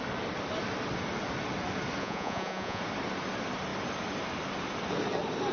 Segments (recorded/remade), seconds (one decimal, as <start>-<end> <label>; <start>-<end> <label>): 0.0-2.0 recorded; 2.0-2.8 remade; 2.8-5.5 recorded

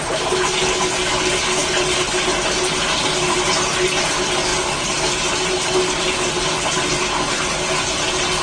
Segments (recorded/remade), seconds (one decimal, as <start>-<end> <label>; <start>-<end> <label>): 0.0-8.4 recorded

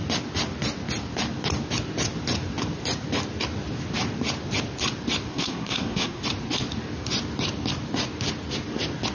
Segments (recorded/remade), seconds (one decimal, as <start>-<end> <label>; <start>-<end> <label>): 0.0-5.3 recorded; 5.3-6.2 remade; 6.2-9.1 recorded

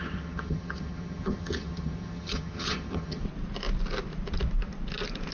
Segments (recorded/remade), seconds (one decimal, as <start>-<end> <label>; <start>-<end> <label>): 0.0-3.2 remade; 3.2-5.3 recorded

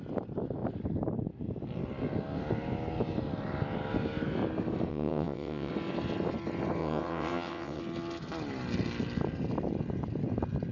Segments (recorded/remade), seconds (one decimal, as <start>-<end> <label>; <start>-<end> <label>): 0.0-4.9 recorded; 4.9-5.7 remade; 5.7-6.8 recorded; 6.8-7.8 remade; 7.8-10.7 recorded

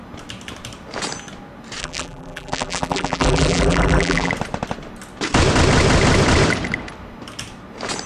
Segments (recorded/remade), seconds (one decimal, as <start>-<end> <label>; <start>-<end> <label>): 0.0-1.8 recorded; 1.8-4.3 remade; 4.3-8.1 recorded

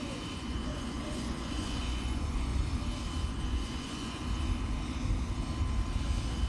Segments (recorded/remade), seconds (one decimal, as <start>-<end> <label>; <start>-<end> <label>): 0.0-2.5 remade; 2.5-3.3 recorded; 3.3-4.2 remade; 4.2-6.5 recorded